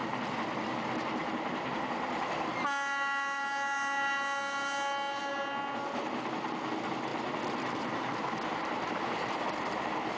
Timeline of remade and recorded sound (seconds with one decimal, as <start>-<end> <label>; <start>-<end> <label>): 0.0-10.2 recorded